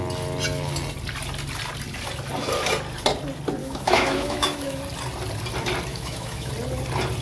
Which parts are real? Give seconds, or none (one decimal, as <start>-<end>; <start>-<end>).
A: 0.0-3.6; 4.8-5.9; 6.5-7.2